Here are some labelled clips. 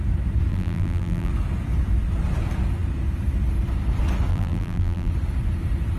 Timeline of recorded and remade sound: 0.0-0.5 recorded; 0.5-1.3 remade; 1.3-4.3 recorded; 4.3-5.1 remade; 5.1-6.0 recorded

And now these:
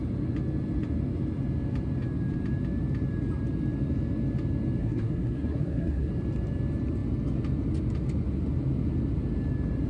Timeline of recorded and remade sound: 0.0-4.8 recorded; 4.8-6.1 remade; 6.1-9.9 recorded

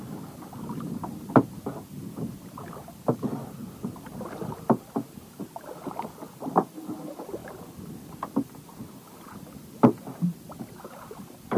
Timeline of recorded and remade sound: 0.0-11.6 recorded

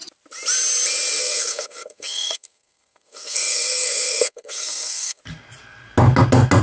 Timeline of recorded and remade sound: 0.0-1.2 recorded; 1.2-5.2 remade; 5.2-6.6 recorded

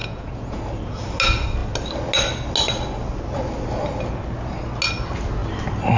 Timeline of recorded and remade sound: 0.0-0.6 remade; 0.6-6.0 recorded

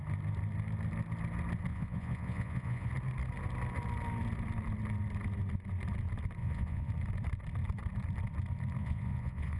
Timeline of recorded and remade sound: 0.0-1.7 recorded; 1.7-2.9 remade; 2.9-6.4 recorded; 6.4-6.9 remade; 6.9-8.8 recorded; 8.8-9.6 remade

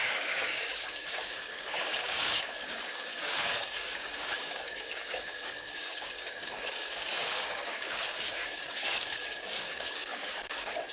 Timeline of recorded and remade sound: 0.0-10.9 remade